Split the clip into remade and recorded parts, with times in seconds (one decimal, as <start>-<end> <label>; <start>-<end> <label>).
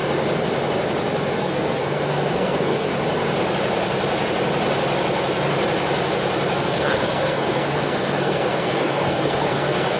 0.0-1.4 recorded; 1.4-2.9 remade; 2.9-6.6 recorded; 6.6-10.0 remade